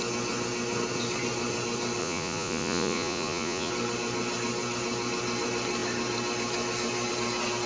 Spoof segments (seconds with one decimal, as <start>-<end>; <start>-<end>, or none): 2.0-3.7